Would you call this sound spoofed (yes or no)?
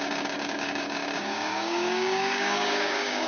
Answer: yes